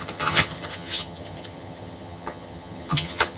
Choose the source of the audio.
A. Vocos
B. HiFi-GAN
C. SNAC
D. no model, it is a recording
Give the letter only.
B